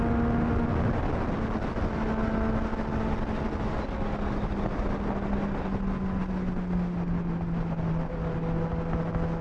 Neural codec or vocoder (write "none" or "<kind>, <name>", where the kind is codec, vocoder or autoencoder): none